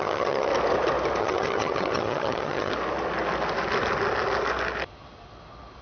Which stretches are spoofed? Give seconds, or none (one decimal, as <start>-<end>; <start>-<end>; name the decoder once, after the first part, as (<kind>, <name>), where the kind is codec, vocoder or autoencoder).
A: 0.0-0.5 (vocoder, HiFi-GAN); 1.2-2.7